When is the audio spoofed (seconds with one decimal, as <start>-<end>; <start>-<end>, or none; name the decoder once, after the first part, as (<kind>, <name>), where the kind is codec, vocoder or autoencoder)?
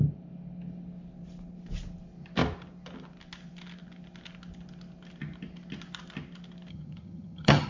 6.7-7.7 (vocoder, HiFi-GAN)